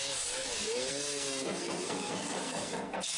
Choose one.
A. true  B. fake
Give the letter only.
B